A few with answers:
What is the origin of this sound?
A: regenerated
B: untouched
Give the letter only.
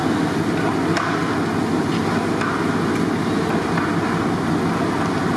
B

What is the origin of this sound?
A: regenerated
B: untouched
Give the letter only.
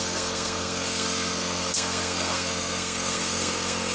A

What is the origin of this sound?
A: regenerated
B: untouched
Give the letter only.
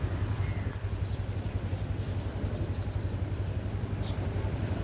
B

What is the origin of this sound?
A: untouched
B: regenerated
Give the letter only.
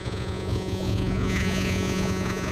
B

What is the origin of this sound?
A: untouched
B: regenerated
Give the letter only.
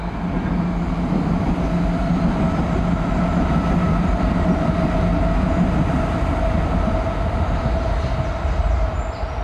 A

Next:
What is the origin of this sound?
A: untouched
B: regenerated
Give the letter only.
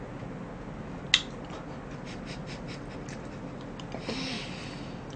A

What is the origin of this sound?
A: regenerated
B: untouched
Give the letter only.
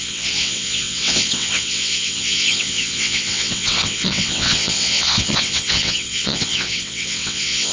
A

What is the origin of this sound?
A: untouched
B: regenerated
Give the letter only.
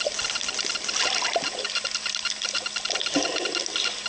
A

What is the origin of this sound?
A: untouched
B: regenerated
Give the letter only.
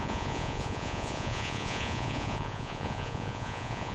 B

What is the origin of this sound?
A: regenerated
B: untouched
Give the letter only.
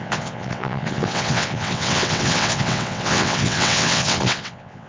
A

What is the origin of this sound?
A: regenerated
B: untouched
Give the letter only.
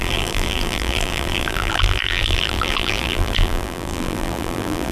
A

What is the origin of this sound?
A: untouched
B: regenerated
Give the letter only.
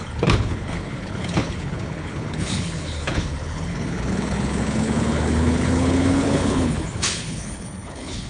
B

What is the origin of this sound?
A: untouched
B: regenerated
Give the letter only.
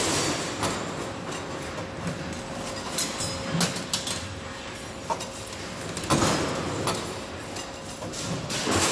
A